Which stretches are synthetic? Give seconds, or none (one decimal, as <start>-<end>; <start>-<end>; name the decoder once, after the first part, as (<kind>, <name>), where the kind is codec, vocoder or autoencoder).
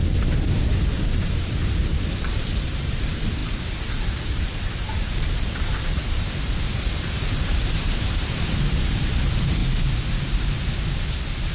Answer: 0.0-9.6 (vocoder, BigVGAN v2)